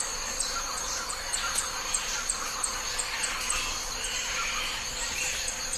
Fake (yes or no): no